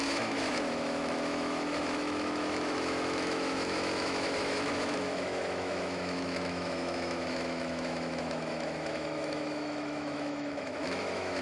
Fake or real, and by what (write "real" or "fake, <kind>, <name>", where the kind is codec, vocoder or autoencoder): fake, autoencoder, DAC-VAE